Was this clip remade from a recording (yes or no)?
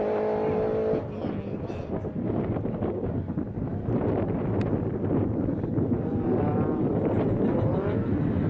no